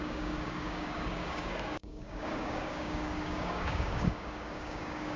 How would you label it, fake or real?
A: fake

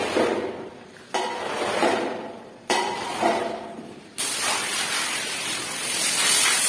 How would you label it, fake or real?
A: real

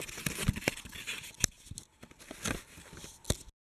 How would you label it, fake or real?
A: real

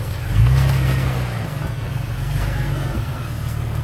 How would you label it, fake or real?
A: fake